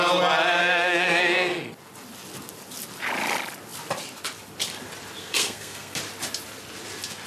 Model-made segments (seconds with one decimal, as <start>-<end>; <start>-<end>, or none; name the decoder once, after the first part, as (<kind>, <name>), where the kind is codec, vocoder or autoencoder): 0.6-1.7 (codec, SNAC); 5.2-6.0